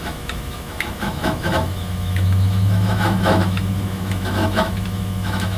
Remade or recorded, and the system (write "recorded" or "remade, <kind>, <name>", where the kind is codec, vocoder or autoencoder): remade, autoencoder, DAC-VAE